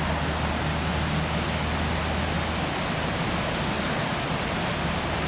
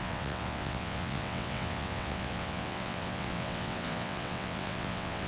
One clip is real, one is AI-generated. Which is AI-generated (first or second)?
second